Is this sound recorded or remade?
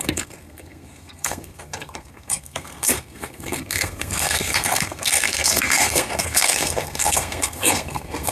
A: remade